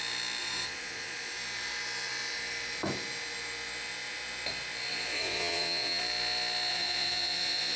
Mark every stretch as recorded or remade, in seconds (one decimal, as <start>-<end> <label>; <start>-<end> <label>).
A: 0.0-0.4 recorded; 0.4-1.3 remade; 1.3-4.9 recorded; 4.9-6.0 remade; 6.0-6.7 recorded; 6.7-7.8 remade